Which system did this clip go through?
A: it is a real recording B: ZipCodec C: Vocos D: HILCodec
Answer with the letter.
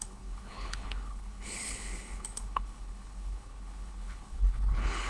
D